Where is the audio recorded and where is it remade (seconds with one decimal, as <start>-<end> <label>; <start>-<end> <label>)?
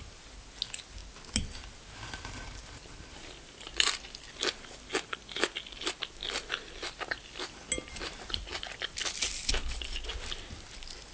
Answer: 0.0-11.1 recorded